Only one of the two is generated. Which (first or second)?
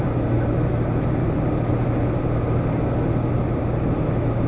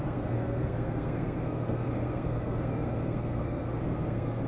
second